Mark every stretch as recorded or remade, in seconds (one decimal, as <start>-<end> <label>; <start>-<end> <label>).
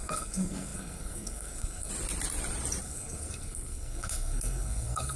0.0-1.9 remade; 1.9-2.8 recorded; 2.8-5.2 remade